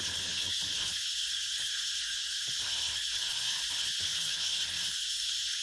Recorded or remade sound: remade